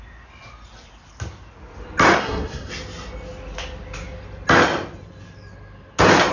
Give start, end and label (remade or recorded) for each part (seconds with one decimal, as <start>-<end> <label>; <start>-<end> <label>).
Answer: 0.0-2.2 recorded; 2.2-2.7 remade; 2.7-6.3 recorded